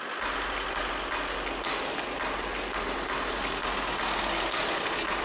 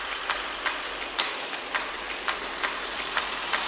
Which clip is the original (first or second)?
first